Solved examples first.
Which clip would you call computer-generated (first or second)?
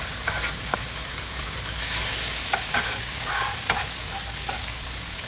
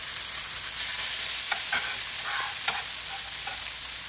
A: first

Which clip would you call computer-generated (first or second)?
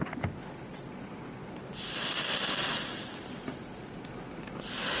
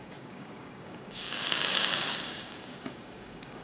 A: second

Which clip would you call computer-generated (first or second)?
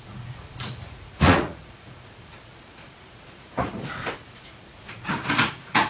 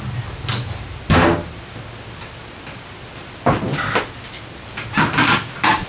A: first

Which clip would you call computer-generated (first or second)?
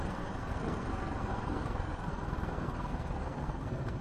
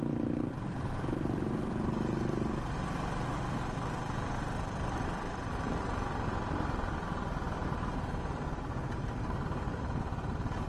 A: first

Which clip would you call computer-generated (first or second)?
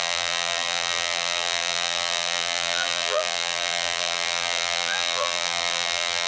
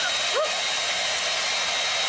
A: first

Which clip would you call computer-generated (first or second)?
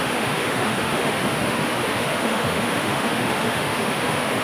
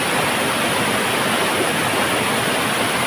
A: first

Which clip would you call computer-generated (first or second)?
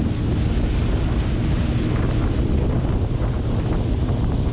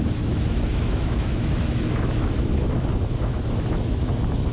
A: second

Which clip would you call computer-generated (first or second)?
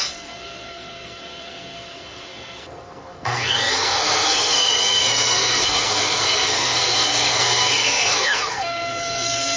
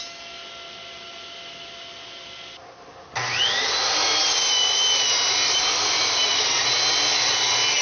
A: first